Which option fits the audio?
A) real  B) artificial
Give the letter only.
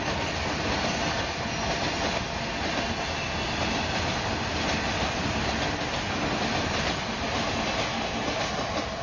A